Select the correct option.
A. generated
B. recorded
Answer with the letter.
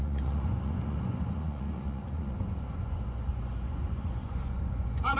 A